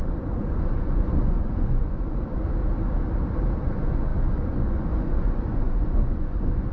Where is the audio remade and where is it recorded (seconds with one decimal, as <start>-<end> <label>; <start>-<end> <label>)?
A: 0.0-2.6 remade; 2.6-3.6 recorded; 3.6-6.7 remade